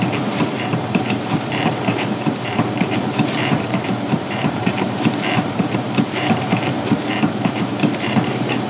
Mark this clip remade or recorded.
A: remade